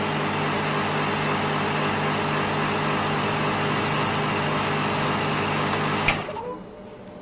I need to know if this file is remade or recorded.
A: recorded